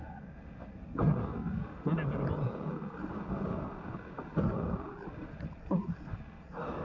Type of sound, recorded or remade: recorded